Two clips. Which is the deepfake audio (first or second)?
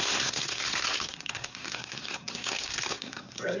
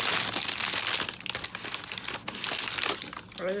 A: first